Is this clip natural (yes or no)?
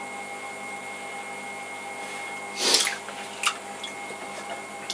yes